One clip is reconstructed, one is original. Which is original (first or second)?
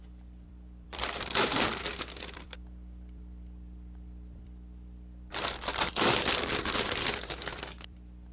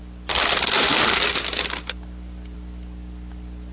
second